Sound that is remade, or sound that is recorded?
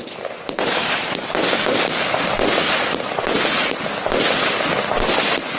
recorded